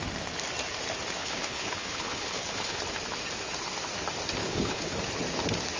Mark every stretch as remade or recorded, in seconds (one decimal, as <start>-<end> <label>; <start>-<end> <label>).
0.0-1.2 recorded; 1.2-2.8 remade; 2.8-4.4 recorded; 4.4-5.0 remade; 5.0-5.8 recorded